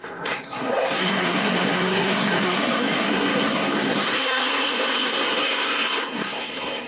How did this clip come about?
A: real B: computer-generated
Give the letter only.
B